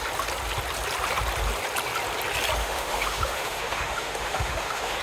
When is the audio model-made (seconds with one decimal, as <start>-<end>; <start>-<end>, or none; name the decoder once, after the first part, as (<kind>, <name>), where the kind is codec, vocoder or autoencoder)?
2.6-5.0 (autoencoder, DAC-VAE)